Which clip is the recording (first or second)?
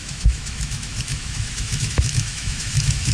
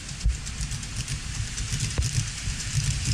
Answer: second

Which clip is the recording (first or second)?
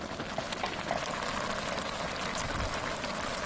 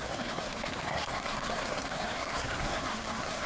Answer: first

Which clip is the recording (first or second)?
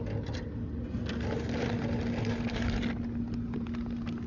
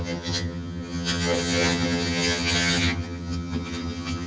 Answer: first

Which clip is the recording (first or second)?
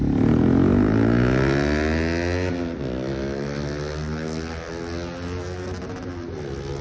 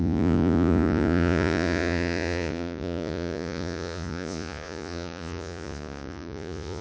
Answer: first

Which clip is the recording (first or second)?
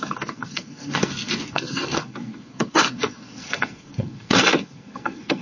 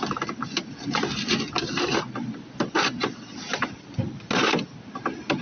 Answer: second